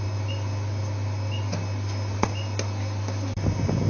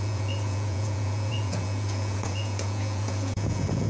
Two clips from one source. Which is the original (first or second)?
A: first